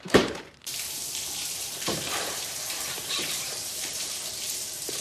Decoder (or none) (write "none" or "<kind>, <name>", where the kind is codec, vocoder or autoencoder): vocoder, BigVGAN v2